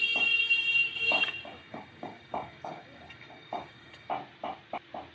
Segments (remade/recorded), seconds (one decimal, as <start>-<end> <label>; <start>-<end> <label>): 0.0-1.0 recorded; 1.0-4.1 remade; 4.1-5.1 recorded

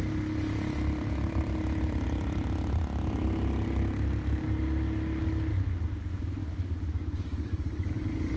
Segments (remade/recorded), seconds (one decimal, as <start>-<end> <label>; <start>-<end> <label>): 0.0-5.5 recorded; 5.5-8.0 remade; 8.0-8.4 recorded

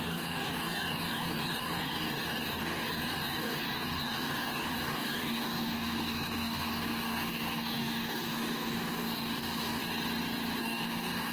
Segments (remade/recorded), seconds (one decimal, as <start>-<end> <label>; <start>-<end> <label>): 0.0-9.8 remade; 9.8-10.6 recorded; 10.6-11.3 remade

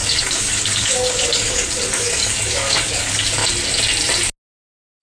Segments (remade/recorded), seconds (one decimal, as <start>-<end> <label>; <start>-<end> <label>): 0.0-3.4 remade; 3.4-5.0 recorded

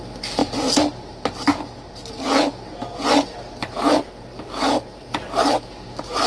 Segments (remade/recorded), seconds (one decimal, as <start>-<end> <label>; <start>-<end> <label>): 0.0-4.3 recorded; 4.3-4.8 remade; 4.8-6.3 recorded

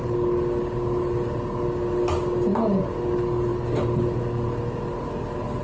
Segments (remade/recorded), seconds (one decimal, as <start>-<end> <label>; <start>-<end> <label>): 0.0-5.6 recorded

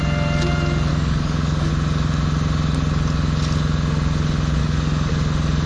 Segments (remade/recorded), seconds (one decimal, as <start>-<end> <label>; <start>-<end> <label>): 0.0-0.9 recorded; 0.9-1.7 remade; 1.7-4.6 recorded; 4.6-5.1 remade; 5.1-5.7 recorded